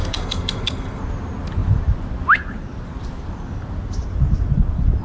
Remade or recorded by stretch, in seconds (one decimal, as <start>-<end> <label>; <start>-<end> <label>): 0.0-1.0 remade; 1.0-5.0 recorded